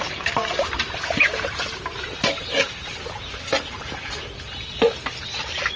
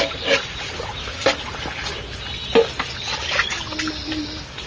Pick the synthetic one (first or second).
first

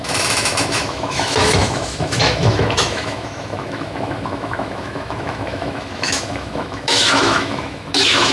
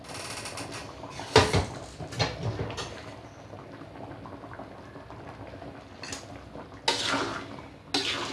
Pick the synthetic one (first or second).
first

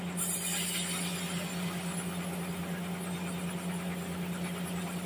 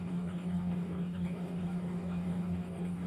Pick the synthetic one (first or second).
second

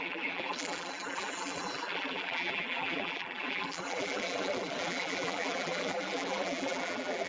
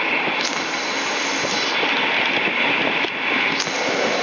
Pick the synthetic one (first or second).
first